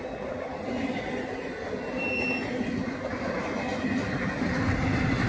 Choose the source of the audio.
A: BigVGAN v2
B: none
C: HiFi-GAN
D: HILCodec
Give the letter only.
B